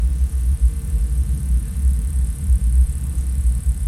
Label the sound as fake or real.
fake